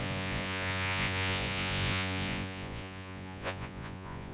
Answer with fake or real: fake